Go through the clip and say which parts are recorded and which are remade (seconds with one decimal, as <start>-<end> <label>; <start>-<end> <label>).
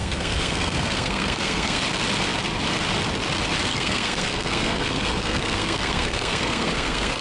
0.0-1.8 remade; 1.8-3.7 recorded; 3.7-7.2 remade